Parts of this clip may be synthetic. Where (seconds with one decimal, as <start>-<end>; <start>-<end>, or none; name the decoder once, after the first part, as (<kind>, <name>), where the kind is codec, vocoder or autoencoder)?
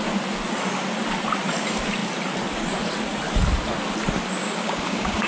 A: 4.4-5.3 (codec, DAC)